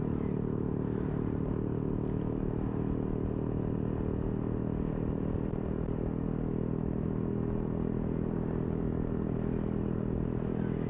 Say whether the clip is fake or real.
real